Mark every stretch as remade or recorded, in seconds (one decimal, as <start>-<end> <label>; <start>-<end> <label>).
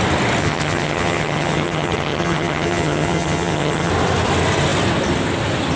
0.0-0.4 recorded; 0.4-3.9 remade; 3.9-5.8 recorded